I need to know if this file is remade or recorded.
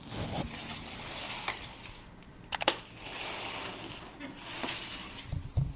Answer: recorded